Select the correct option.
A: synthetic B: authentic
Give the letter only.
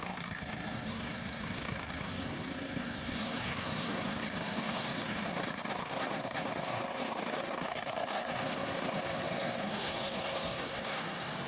A